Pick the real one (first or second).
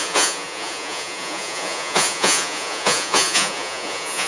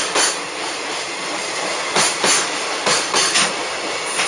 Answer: second